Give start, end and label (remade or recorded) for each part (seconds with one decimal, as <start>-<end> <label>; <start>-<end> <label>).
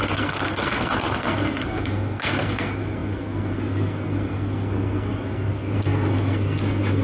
0.0-7.0 remade